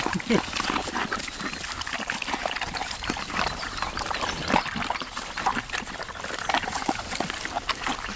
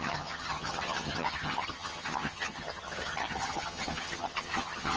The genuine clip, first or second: first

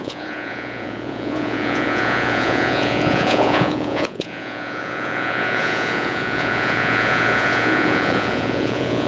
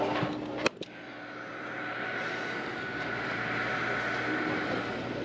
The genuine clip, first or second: second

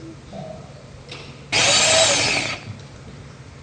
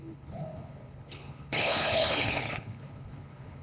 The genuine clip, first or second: first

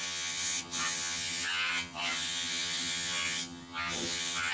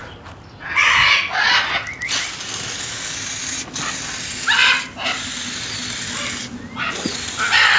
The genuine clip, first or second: second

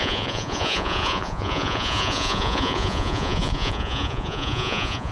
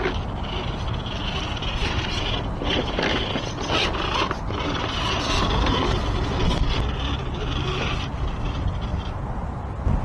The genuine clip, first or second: second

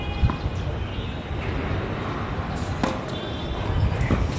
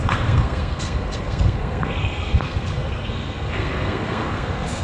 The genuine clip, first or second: first